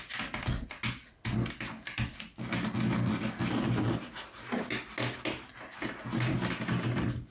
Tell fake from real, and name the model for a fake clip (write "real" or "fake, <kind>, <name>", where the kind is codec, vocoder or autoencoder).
real